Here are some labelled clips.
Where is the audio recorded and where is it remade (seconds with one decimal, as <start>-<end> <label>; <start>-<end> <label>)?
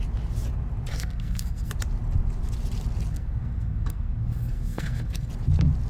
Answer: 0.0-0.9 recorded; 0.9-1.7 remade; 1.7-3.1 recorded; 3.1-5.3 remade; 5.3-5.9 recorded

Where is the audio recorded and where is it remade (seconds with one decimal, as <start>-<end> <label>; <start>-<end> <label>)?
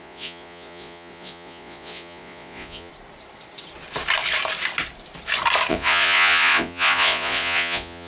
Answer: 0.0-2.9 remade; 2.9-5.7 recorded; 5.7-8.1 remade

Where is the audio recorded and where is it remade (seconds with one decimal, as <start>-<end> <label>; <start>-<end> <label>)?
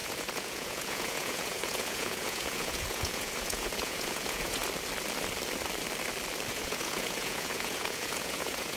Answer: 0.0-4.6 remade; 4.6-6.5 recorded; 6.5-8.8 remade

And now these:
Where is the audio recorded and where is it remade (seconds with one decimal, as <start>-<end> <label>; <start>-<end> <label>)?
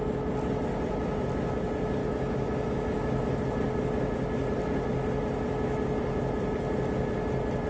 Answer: 0.0-2.0 recorded; 2.0-3.4 remade; 3.4-7.7 recorded